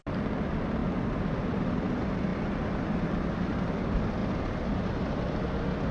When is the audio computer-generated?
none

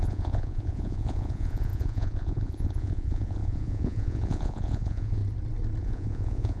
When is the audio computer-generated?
0.0-5.2 (vocoder, Vocos); 5.8-6.6